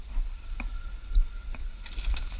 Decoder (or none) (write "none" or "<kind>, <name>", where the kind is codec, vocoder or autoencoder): none